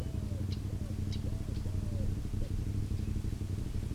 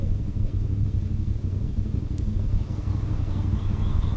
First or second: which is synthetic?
second